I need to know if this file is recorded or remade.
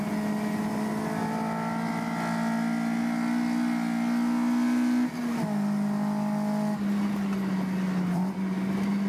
recorded